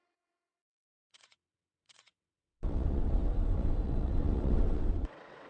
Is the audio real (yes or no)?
no